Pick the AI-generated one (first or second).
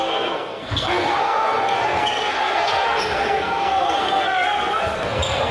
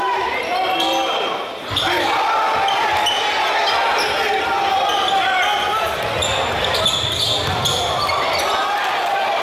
first